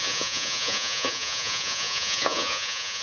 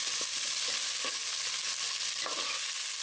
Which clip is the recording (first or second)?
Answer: second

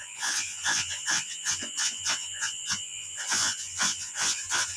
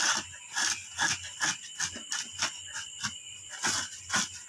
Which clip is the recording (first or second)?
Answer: second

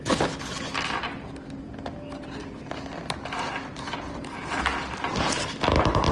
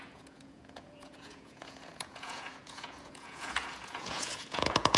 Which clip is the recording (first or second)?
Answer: first